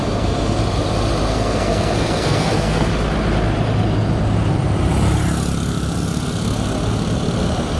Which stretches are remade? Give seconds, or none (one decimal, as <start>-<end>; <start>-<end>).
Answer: 0.0-0.6; 1.3-2.9